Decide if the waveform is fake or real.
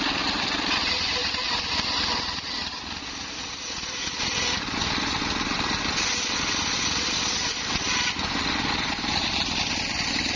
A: real